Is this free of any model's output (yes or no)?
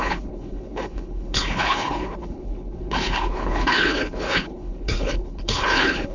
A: no